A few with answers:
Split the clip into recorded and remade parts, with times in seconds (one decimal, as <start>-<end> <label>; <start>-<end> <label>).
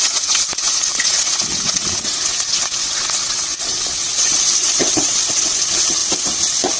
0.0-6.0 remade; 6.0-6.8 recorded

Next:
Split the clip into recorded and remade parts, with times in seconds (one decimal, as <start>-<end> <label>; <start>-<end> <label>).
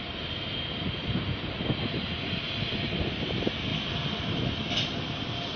0.0-5.6 recorded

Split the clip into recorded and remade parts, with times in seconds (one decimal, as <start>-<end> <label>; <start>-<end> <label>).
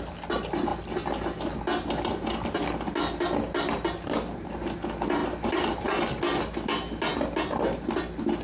0.0-5.2 recorded; 5.2-6.1 remade; 6.1-8.4 recorded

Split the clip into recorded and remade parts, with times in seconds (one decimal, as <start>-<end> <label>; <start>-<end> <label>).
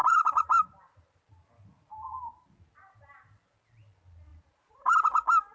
0.0-1.2 remade; 1.2-4.3 recorded; 4.3-4.9 remade; 4.9-5.5 recorded